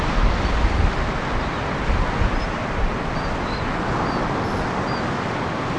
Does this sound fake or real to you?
real